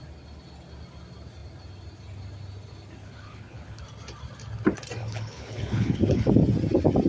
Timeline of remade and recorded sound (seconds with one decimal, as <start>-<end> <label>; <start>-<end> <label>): 0.0-3.0 recorded; 3.0-3.8 remade; 3.8-5.0 recorded; 5.0-6.3 remade; 6.3-7.1 recorded